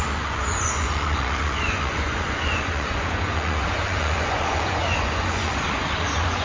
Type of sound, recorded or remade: remade